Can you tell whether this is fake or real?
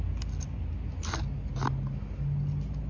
real